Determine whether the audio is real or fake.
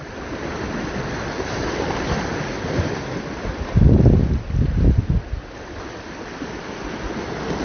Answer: real